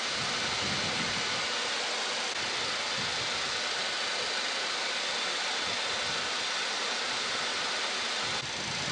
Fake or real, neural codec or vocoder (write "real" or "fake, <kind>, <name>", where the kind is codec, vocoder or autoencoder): real